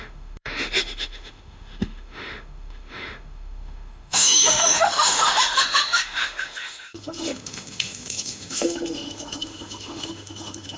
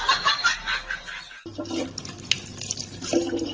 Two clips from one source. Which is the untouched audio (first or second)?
second